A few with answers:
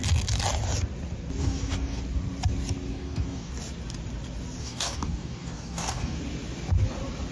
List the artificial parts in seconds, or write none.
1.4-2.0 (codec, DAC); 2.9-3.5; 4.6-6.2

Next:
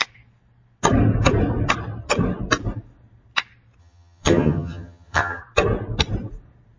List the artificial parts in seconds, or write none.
3.8-5.4 (vocoder, HiFi-GAN)

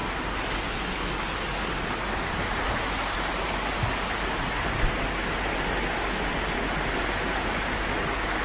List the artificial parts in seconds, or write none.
none